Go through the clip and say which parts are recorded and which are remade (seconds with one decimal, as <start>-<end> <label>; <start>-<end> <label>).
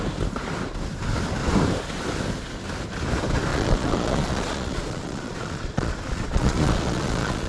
0.0-3.5 recorded; 3.5-7.5 remade